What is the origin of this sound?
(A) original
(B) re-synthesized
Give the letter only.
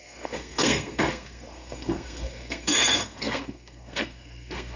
B